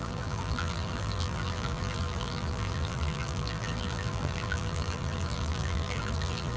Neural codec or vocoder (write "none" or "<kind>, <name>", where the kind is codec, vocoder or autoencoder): vocoder, BigVGAN v2